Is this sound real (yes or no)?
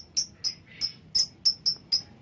yes